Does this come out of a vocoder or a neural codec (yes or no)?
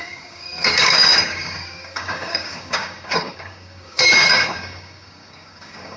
yes